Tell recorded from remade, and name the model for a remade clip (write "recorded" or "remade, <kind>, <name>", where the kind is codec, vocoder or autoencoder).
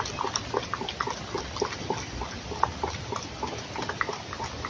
recorded